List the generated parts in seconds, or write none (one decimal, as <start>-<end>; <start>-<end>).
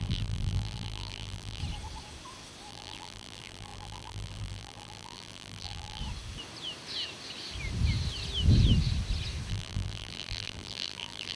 0.0-1.6; 2.7-6.0; 9.5-11.4